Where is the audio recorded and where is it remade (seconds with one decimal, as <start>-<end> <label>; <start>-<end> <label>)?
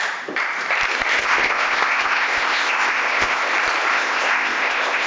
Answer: 0.0-1.1 recorded; 1.1-3.5 remade; 3.5-3.9 recorded; 3.9-5.1 remade